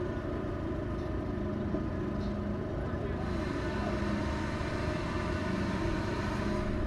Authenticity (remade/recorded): recorded